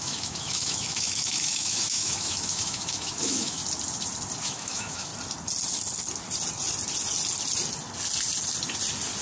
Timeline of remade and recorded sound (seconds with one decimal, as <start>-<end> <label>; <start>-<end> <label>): 0.0-3.6 remade; 3.6-4.4 recorded; 4.4-5.1 remade; 5.1-9.2 recorded